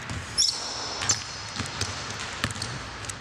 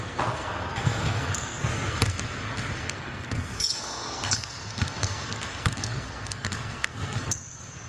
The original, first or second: first